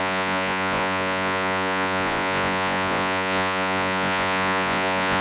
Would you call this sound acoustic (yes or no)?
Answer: no